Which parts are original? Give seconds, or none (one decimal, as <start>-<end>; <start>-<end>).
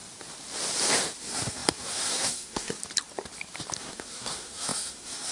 0.0-1.2; 2.8-3.8